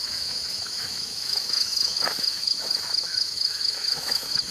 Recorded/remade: remade